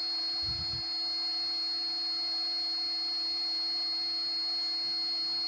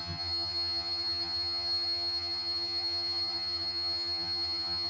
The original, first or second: first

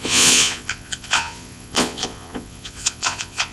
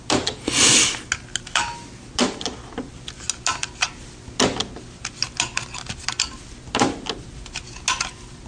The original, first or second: second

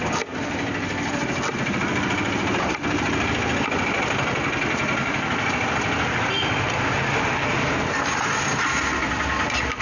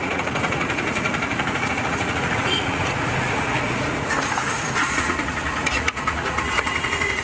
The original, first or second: first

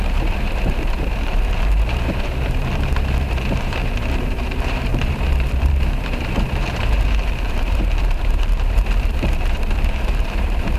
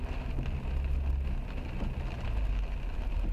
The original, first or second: second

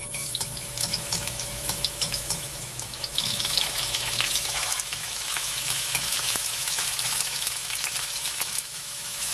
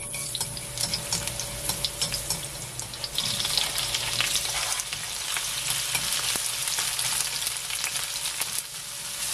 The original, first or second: second